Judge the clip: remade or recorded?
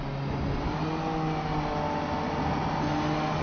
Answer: recorded